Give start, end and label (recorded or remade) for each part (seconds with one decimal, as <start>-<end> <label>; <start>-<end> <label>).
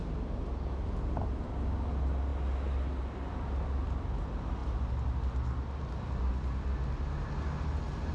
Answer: 0.0-8.1 recorded